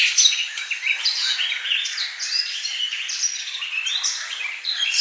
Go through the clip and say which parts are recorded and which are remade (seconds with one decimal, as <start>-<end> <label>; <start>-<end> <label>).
0.0-1.2 remade; 1.2-2.2 recorded; 2.2-5.0 remade